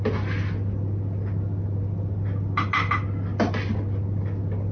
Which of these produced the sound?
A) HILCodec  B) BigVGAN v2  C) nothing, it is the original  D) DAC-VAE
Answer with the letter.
C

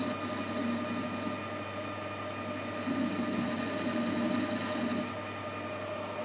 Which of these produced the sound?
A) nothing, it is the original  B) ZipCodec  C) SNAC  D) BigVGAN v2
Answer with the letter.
A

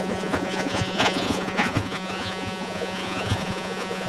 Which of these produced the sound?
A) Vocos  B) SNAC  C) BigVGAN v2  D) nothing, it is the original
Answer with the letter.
A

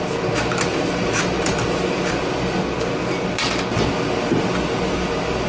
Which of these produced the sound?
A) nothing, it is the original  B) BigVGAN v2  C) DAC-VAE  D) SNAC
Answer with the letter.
A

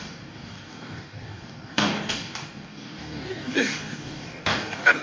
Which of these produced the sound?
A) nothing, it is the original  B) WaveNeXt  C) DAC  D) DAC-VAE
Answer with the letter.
C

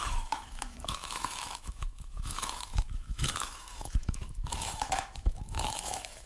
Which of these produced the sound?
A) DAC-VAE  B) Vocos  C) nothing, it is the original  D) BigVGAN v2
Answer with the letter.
A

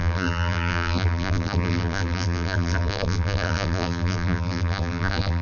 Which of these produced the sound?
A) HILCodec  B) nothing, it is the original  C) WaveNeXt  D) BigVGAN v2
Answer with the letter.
D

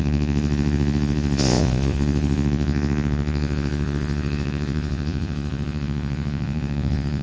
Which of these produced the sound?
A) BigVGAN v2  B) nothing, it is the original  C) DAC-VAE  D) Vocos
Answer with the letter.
D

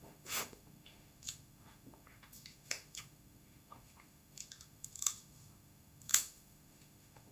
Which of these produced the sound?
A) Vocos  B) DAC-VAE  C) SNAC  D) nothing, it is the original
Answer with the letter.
B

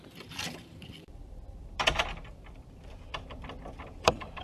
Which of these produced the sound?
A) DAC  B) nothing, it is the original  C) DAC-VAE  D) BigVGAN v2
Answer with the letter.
D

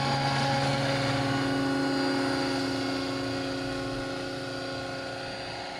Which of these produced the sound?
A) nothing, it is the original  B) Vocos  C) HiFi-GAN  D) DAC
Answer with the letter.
A